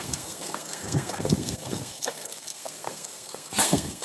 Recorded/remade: remade